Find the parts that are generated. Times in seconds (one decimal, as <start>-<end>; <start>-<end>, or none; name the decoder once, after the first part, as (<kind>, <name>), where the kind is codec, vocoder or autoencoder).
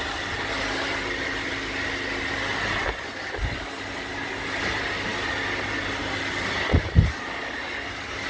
none